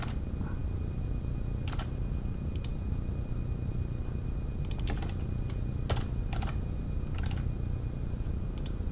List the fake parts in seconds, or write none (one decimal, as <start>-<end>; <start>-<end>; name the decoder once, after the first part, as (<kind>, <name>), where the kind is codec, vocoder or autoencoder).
none

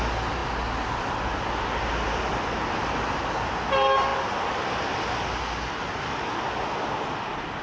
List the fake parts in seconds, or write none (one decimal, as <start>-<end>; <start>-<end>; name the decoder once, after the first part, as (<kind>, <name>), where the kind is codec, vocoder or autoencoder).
none

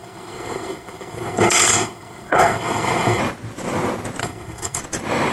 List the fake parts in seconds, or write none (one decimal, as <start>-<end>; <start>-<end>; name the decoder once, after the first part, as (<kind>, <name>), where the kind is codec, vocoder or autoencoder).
0.0-3.2 (codec, SNAC); 4.2-4.8

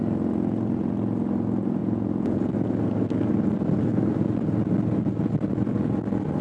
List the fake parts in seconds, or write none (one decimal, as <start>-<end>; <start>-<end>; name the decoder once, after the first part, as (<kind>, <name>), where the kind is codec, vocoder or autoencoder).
1.8-2.5 (vocoder, Vocos)